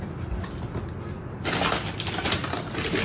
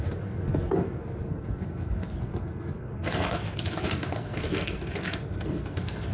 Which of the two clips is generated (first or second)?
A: second